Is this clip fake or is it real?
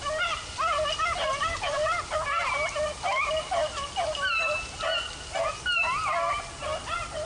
real